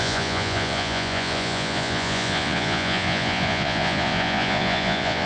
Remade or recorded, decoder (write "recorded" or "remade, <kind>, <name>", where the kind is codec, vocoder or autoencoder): remade, vocoder, Vocos